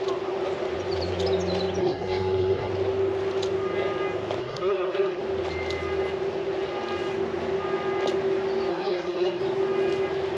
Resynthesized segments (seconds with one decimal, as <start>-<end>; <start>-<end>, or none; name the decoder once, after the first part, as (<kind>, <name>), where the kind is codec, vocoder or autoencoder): 1.8-2.7 (codec, SNAC); 4.4-5.2; 8.7-9.4